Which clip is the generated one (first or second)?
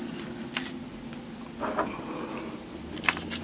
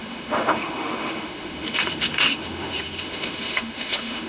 second